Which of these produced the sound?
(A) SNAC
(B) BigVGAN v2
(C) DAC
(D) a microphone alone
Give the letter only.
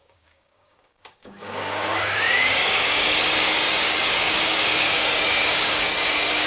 C